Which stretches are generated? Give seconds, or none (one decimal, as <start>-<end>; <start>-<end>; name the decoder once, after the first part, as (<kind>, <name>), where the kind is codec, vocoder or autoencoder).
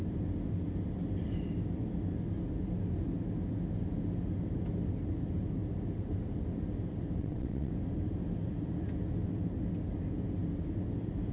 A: 7.2-7.7 (vocoder, WaveNeXt)